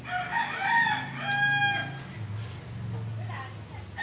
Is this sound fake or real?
real